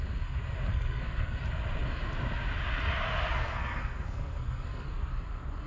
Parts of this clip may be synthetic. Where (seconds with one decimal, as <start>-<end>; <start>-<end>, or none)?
0.7-1.4; 3.4-5.1